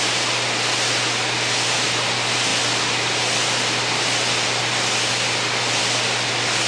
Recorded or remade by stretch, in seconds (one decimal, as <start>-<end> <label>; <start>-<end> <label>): 0.0-6.7 recorded